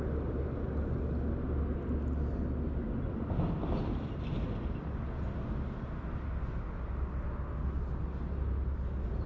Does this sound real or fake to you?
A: real